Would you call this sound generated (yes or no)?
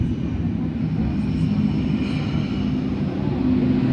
no